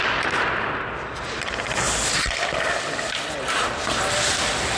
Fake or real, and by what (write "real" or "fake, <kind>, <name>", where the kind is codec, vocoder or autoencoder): real